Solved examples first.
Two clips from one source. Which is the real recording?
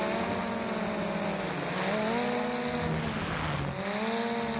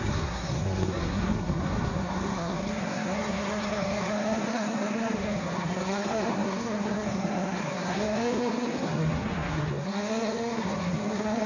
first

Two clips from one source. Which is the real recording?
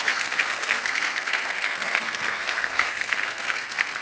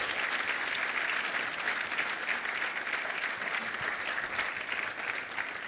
second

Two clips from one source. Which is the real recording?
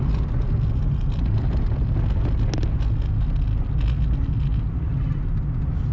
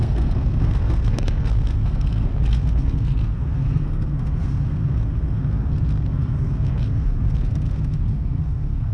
first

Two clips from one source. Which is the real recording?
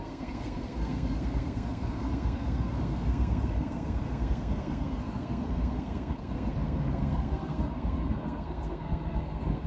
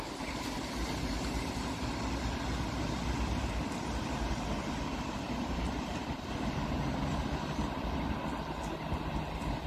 second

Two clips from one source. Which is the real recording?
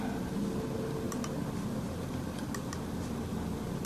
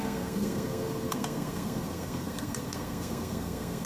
first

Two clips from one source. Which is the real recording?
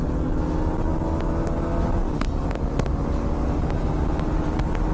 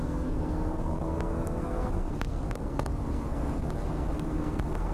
first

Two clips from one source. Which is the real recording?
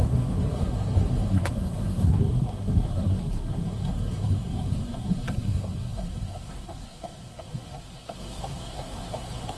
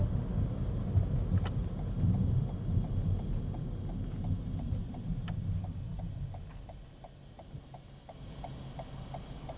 second